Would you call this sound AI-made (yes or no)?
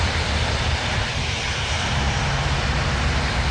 no